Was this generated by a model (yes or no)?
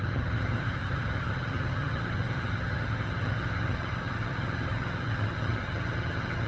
yes